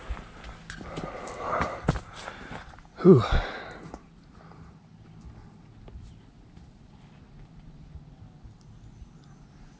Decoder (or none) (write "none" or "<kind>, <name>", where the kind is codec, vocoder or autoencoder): none